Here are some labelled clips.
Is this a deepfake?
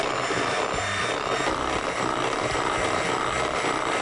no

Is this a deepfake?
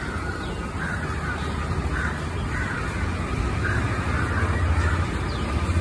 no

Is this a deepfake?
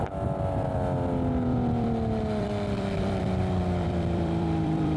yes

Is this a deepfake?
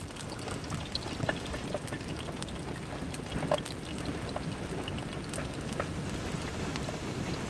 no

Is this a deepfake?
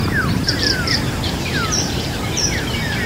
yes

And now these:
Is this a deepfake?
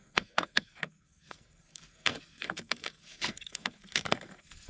yes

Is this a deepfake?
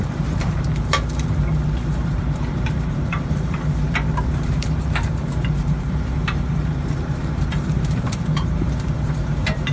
yes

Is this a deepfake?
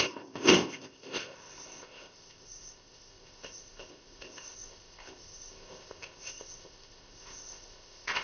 yes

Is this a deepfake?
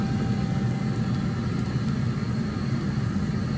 no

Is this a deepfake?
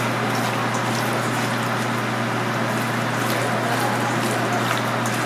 no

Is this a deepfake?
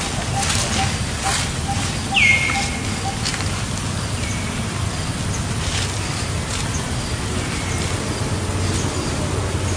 no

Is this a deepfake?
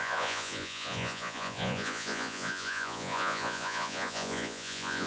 yes